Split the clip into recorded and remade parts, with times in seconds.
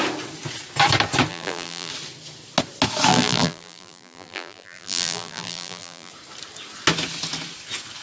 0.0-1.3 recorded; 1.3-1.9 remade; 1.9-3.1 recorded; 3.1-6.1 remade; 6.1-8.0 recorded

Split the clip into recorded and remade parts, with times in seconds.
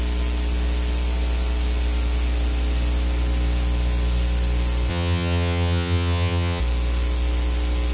0.0-4.9 recorded; 4.9-6.6 remade; 6.6-7.9 recorded